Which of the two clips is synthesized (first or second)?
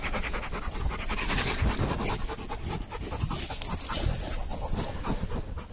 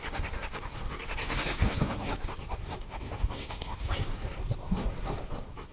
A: second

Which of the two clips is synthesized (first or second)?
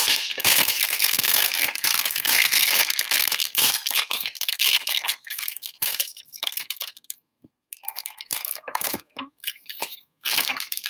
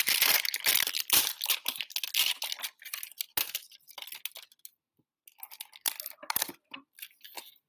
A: first